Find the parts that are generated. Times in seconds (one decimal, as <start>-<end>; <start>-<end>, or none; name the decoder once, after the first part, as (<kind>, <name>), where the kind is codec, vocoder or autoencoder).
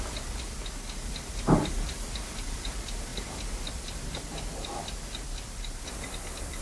none